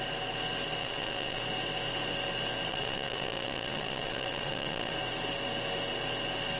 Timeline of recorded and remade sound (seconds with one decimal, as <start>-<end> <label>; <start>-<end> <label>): 0.0-0.8 recorded; 0.8-1.4 remade; 1.4-2.7 recorded; 2.7-4.9 remade; 4.9-6.6 recorded